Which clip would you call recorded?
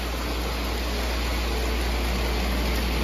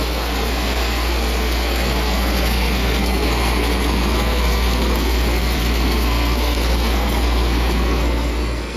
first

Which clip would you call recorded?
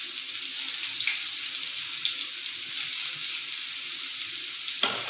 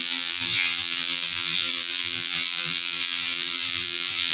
first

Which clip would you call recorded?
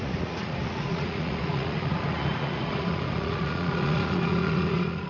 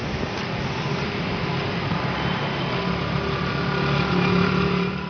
second